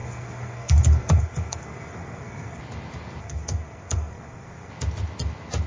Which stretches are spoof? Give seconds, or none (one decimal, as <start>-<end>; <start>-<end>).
0.0-2.6; 3.2-4.7